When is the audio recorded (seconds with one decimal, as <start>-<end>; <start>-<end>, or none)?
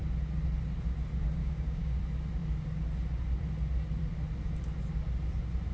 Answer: 0.0-1.4; 2.0-5.7